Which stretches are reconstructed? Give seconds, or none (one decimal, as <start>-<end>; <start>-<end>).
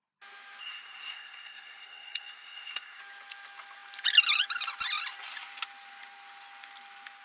0.6-3.0